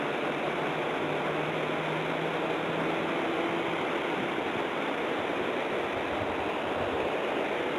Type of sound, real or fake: real